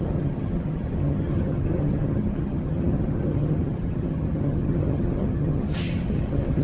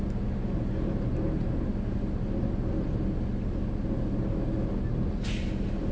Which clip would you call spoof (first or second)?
first